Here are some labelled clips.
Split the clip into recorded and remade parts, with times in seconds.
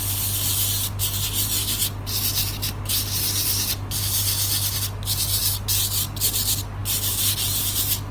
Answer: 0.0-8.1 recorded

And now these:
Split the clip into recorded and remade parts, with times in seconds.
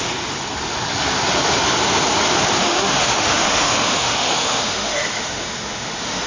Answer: 0.0-2.6 recorded; 2.6-6.3 remade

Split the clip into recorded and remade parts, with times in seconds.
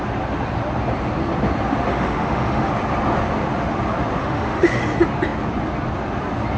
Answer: 0.0-1.9 recorded; 1.9-2.7 remade; 2.7-4.2 recorded; 4.2-4.8 remade; 4.8-6.6 recorded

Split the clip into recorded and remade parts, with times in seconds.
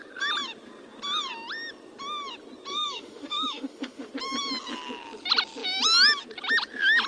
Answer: 0.0-2.7 recorded; 2.7-4.1 remade; 4.1-7.1 recorded